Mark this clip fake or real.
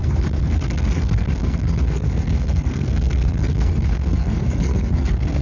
fake